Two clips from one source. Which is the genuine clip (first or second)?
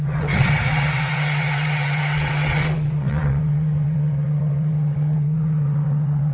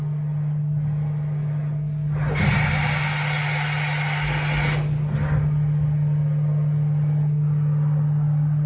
second